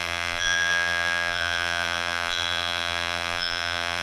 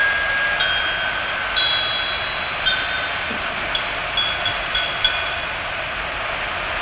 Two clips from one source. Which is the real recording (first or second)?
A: second